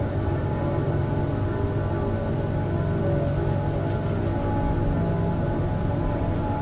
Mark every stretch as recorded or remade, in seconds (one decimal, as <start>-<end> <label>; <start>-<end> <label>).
0.0-1.3 remade; 1.3-5.3 recorded; 5.3-6.6 remade